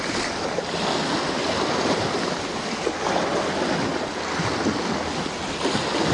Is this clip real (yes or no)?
yes